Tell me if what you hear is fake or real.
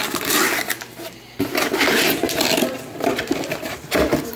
real